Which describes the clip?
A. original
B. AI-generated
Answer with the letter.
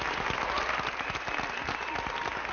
A